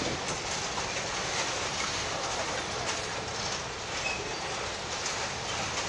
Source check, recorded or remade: recorded